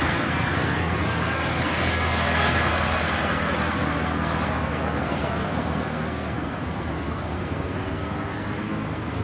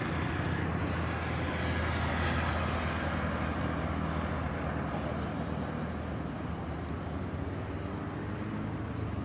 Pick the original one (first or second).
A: second